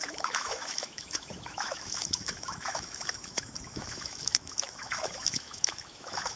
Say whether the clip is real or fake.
fake